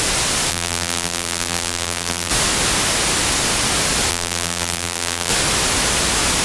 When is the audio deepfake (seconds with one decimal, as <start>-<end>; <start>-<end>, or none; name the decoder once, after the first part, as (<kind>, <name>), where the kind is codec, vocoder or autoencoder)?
0.5-2.3 (vocoder, BigVGAN v2); 4.1-5.3